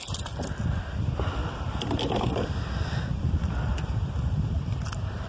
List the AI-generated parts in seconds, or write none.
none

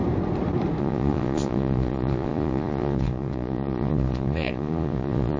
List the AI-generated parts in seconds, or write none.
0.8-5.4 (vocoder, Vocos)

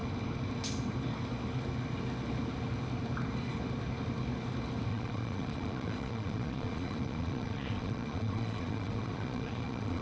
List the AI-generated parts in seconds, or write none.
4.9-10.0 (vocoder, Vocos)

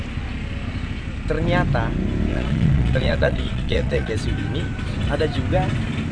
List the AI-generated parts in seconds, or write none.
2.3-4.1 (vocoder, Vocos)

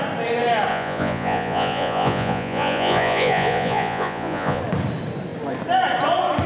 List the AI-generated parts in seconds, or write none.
0.7-4.6 (vocoder, Vocos)